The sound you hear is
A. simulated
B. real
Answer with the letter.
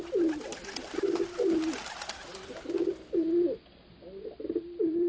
B